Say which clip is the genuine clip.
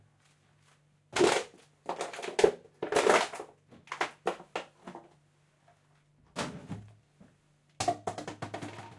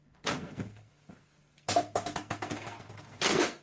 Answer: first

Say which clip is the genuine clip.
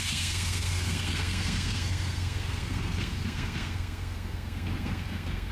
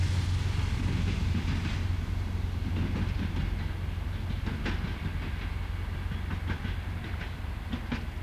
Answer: second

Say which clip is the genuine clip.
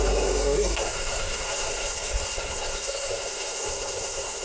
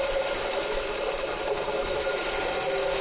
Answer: second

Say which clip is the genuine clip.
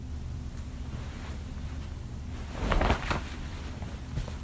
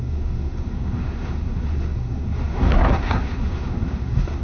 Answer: first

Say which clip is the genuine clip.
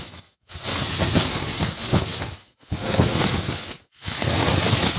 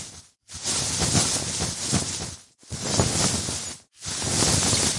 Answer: second